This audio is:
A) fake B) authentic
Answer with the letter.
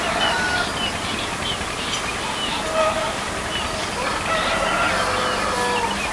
B